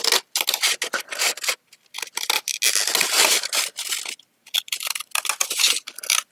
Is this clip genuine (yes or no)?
yes